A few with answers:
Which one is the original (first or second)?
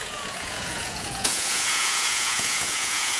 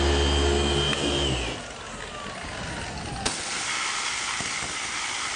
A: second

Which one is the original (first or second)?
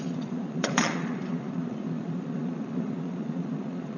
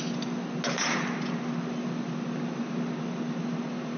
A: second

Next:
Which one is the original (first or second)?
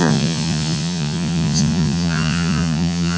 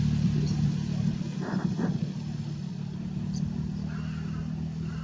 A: second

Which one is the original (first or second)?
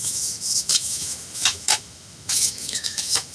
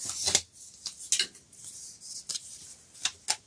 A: second